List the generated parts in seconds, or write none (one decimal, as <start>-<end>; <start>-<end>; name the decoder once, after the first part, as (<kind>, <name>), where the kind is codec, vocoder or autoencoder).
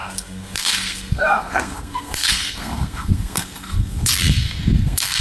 0.0-5.2 (codec, SNAC)